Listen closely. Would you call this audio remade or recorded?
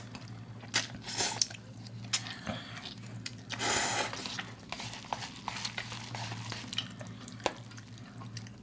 recorded